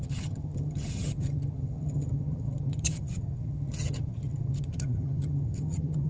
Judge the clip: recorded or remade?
remade